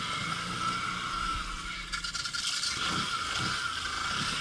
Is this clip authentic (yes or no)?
yes